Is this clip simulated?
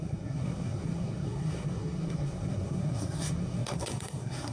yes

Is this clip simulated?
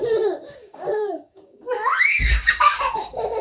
yes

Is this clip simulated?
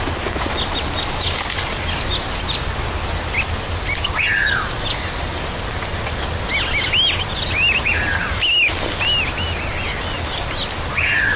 no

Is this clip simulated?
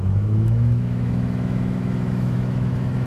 yes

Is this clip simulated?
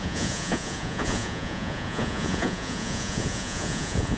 yes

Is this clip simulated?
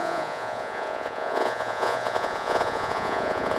yes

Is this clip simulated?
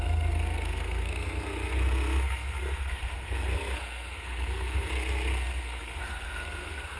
yes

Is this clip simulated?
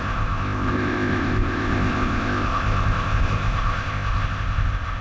yes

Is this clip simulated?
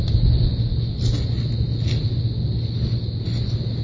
no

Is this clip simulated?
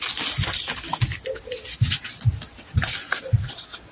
no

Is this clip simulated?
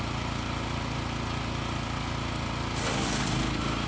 no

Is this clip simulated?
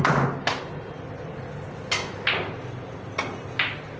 no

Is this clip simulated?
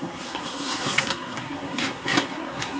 yes